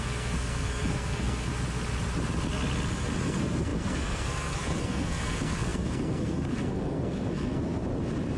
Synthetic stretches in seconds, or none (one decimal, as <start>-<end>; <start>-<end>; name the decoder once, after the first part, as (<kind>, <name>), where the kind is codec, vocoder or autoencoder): 0.0-1.5 (codec, SNAC); 3.2-7.8